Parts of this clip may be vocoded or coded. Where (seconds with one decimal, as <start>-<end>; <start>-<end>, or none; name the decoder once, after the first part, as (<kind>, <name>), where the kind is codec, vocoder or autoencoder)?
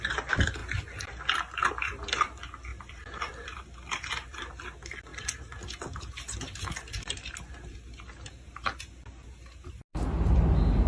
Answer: 2.7-4.5 (vocoder, BigVGAN v2)